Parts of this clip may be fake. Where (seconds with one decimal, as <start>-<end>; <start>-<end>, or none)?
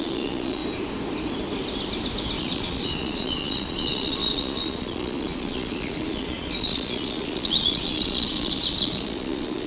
0.0-0.6; 2.4-9.7